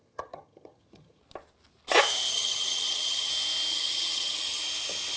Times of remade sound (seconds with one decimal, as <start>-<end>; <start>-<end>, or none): 0.0-1.2; 2.3-3.3; 3.7-4.6